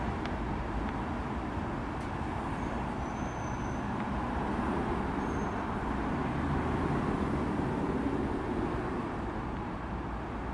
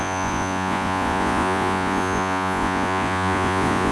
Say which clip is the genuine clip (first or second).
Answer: first